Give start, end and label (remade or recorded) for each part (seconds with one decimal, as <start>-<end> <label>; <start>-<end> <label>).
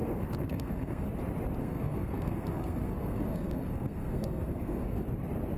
0.0-1.1 remade; 1.1-1.6 recorded; 1.6-5.0 remade; 5.0-5.6 recorded